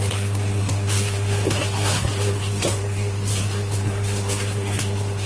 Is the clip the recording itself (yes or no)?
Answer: no